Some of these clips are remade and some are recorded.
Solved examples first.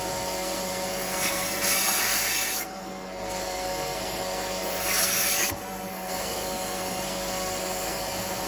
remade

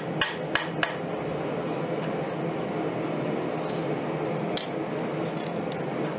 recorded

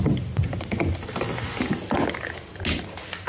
recorded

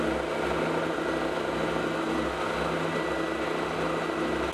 recorded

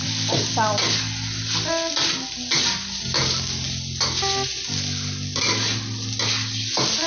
recorded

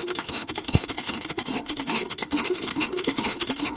remade